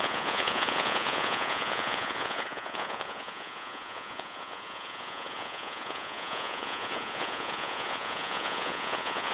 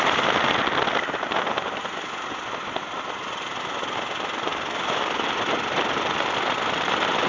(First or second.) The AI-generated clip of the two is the first